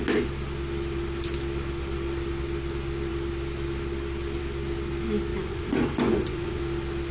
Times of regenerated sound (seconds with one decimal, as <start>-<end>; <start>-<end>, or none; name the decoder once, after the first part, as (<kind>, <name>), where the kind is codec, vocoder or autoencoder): 5.3-6.6 (vocoder, Vocos)